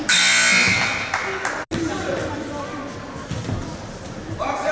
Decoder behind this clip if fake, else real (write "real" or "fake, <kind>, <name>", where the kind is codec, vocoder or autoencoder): real